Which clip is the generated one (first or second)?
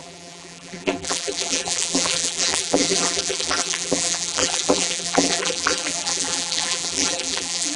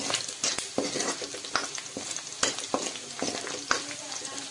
first